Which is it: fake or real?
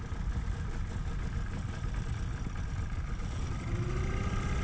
real